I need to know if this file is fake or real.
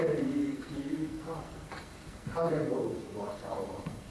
fake